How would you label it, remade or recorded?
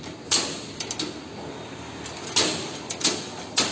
recorded